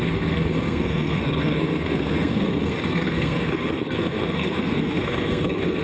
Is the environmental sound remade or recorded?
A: remade